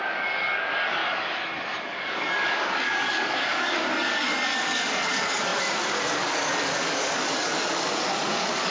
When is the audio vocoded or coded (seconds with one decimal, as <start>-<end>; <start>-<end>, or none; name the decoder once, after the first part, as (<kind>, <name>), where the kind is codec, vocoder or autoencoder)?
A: 0.0-1.0 (codec, DAC); 1.8-8.7